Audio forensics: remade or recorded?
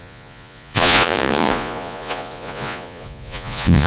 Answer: remade